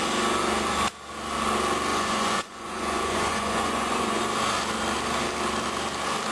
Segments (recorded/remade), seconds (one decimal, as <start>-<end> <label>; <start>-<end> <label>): 0.0-1.9 recorded; 1.9-4.2 remade; 4.2-6.3 recorded